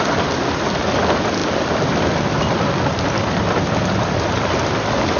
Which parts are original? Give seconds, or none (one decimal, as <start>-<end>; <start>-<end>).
0.0-5.2